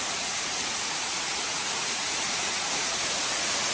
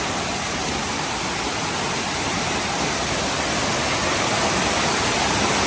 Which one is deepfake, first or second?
first